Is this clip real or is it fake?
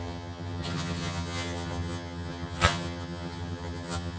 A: fake